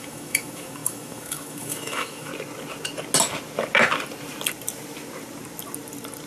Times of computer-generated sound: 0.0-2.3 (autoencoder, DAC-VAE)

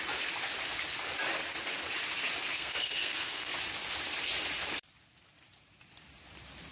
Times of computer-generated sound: 2.5-3.5 (codec, SNAC)